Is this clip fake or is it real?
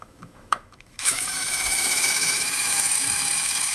fake